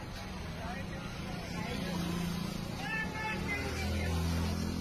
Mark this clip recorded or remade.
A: recorded